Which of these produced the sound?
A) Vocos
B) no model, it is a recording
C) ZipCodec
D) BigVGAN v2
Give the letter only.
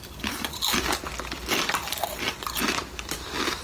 D